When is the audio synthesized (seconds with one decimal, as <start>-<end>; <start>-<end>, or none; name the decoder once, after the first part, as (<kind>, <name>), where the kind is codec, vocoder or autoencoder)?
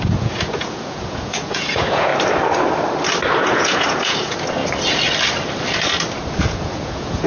0.0-2.1 (vocoder, Vocos); 3.4-4.6; 6.4-7.3